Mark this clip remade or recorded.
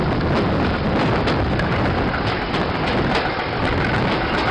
recorded